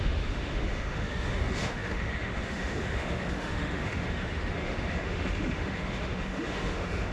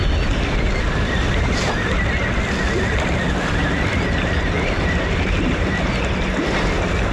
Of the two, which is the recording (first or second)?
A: second